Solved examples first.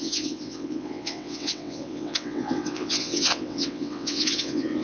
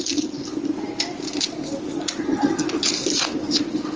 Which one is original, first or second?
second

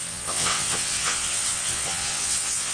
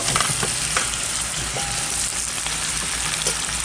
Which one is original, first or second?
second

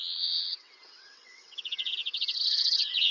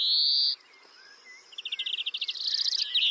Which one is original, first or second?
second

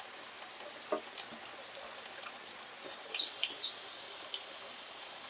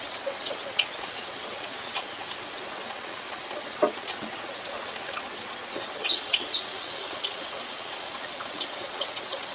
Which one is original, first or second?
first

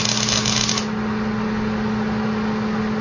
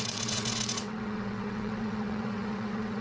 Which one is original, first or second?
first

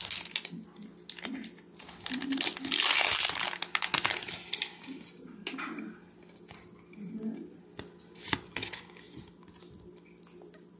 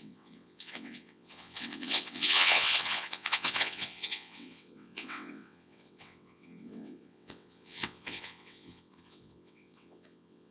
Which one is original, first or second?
first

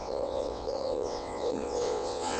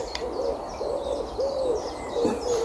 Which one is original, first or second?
second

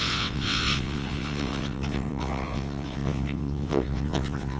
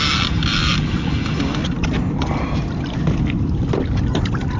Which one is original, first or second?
second